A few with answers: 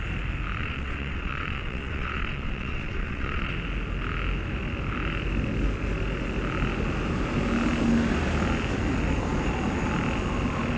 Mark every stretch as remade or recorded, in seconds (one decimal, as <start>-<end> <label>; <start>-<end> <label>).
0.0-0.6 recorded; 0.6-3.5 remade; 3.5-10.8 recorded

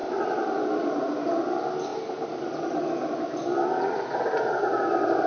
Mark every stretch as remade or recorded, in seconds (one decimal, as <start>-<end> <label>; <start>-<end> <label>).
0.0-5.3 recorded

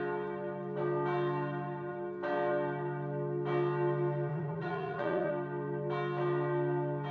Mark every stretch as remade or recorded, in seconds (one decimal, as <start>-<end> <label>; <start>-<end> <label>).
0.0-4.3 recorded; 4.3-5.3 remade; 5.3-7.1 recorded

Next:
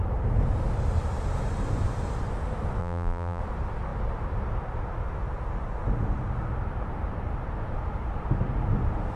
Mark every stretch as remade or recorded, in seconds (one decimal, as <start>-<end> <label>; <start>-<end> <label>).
0.0-2.8 recorded; 2.8-3.4 remade; 3.4-9.2 recorded

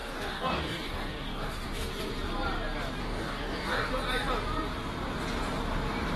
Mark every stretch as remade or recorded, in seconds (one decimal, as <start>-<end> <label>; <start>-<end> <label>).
0.0-1.9 remade; 1.9-3.0 recorded; 3.0-3.9 remade; 3.9-6.2 recorded

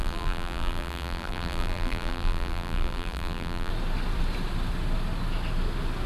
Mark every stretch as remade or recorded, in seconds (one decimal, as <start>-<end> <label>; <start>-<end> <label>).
0.0-3.7 remade; 3.7-6.1 recorded